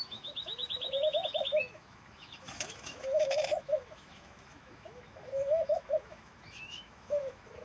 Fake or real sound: fake